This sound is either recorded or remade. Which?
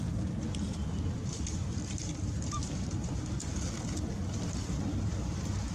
recorded